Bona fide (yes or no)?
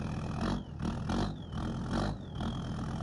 yes